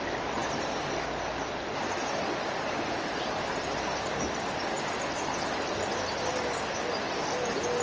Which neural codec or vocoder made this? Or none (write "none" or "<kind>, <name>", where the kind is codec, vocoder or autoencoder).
none